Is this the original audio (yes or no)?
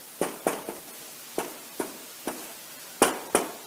yes